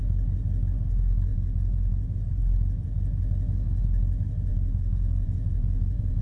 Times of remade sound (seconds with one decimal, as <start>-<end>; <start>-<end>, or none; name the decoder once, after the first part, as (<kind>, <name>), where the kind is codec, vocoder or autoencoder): 1.3-2.4 (vocoder, Vocos); 4.5-6.2